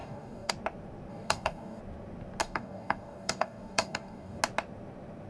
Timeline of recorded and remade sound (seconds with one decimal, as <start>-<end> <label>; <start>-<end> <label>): 0.0-0.5 remade; 0.5-1.1 recorded; 1.1-1.8 remade; 1.8-2.4 recorded; 2.4-4.4 remade; 4.4-5.3 recorded